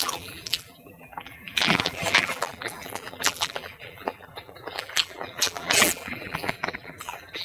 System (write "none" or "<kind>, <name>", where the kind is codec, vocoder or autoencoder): vocoder, BigVGAN v2